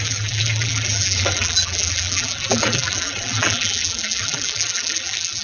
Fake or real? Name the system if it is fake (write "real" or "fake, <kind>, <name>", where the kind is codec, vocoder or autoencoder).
fake, vocoder, BigVGAN v2